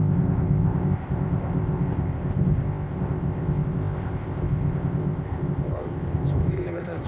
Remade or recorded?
remade